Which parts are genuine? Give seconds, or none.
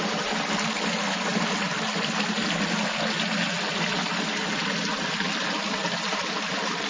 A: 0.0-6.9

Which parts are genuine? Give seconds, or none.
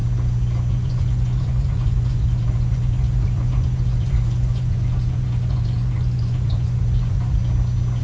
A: 0.0-0.7; 7.4-8.0